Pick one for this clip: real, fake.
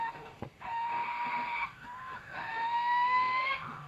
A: fake